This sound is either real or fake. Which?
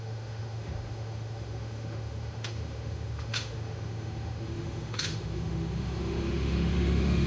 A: fake